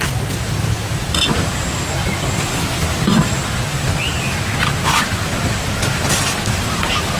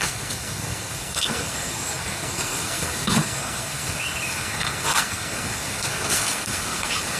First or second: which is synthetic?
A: second